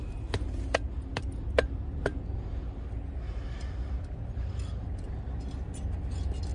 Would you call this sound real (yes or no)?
yes